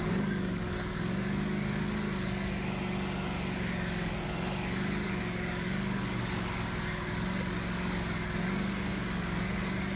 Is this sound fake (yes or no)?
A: yes